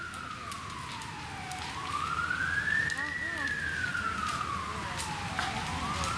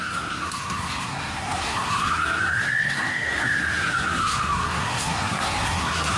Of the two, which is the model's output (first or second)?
second